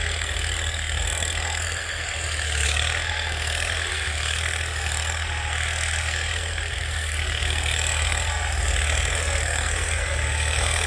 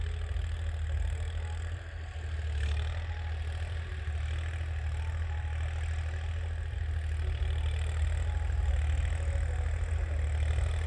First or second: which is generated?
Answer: first